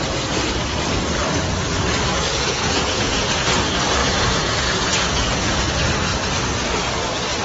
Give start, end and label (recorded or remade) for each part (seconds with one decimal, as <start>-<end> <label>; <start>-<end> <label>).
0.0-2.1 recorded; 2.1-3.3 remade; 3.3-4.0 recorded; 4.0-5.6 remade; 5.6-7.4 recorded